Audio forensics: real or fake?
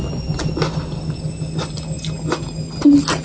real